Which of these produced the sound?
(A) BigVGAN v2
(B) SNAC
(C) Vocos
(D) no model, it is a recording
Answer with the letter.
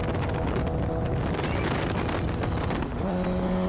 D